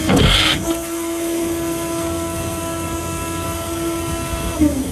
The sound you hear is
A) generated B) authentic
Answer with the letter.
A